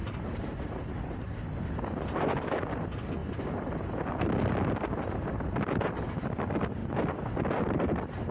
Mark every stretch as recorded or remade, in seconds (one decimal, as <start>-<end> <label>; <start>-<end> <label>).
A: 0.0-1.2 remade; 1.2-8.3 recorded